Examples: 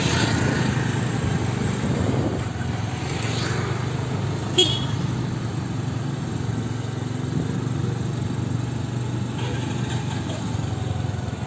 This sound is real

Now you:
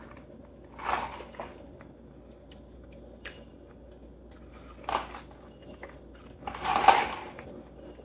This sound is real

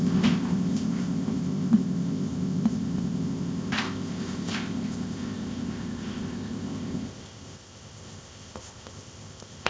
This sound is fake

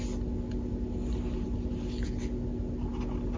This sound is real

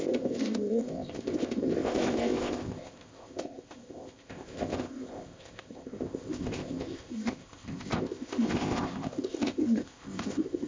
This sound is fake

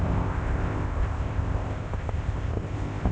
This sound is fake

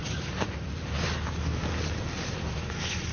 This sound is real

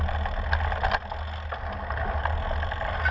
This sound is real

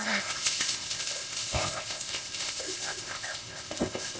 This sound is fake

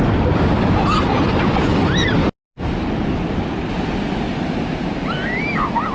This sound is real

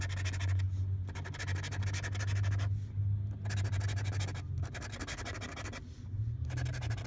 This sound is real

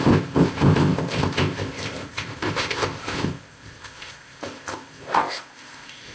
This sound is fake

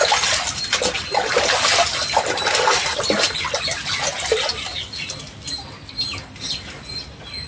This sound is real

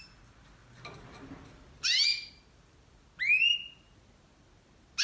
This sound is real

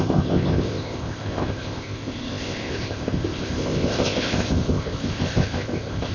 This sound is fake